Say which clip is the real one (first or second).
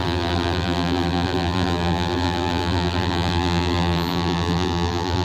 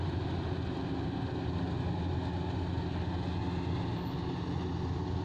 second